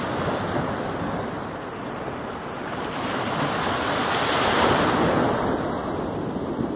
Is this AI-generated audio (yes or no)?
no